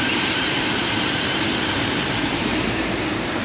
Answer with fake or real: fake